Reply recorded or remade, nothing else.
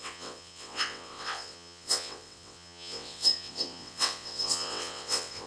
remade